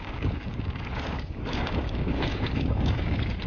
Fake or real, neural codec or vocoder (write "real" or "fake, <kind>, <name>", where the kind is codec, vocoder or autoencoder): fake, codec, DAC